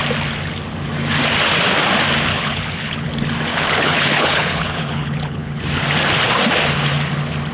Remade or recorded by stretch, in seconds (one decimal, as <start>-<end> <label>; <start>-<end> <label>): 0.0-2.3 recorded; 2.3-3.1 remade; 3.1-3.5 recorded; 3.5-5.6 remade; 5.6-7.5 recorded